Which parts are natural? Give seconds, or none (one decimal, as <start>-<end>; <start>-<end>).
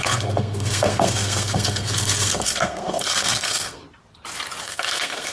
3.8-4.6